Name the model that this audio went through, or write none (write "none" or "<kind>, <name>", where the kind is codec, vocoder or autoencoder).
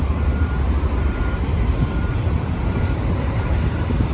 vocoder, BigVGAN v2